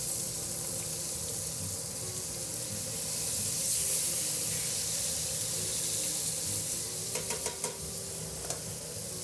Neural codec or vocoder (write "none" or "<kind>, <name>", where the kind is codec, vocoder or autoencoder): none